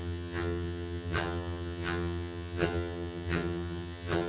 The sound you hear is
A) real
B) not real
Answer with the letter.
B